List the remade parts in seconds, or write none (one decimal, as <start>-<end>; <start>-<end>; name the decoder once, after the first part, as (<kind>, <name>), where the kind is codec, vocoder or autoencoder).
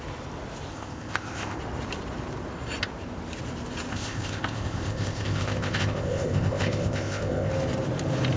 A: 0.7-1.6 (codec, ZipCodec); 3.9-7.5